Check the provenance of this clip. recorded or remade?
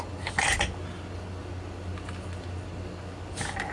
recorded